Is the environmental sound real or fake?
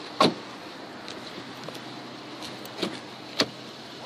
real